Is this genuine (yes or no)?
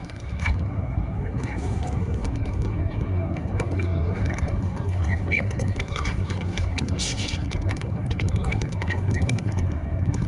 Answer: no